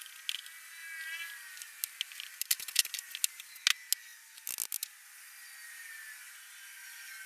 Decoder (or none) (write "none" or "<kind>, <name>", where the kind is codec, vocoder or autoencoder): none